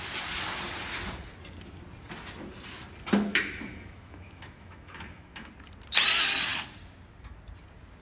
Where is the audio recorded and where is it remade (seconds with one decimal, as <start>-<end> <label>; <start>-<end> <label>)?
0.0-3.3 recorded; 3.3-5.5 remade; 5.5-8.0 recorded